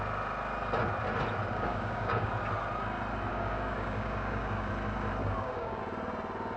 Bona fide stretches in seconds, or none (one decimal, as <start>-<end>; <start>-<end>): 0.0-1.5; 2.3-3.3; 4.7-5.2; 5.8-6.6